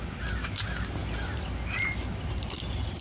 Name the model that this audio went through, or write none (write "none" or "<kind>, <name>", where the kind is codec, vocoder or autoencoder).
none